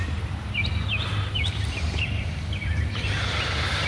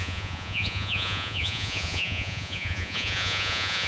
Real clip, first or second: first